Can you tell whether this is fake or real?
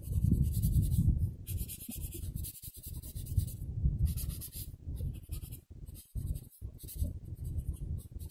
real